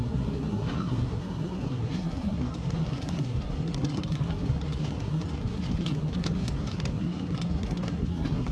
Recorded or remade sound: remade